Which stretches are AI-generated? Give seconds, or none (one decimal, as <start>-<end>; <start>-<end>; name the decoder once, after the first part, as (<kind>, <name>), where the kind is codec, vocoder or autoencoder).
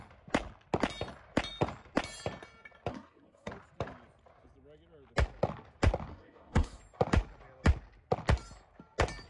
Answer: 2.9-3.5 (codec, SNAC); 6.1-6.8